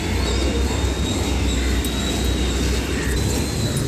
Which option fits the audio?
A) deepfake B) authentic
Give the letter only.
B